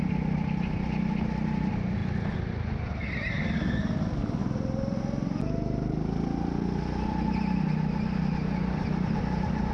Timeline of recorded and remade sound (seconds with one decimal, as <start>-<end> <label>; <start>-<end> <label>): 0.0-2.0 recorded; 2.0-3.7 remade; 3.7-9.7 recorded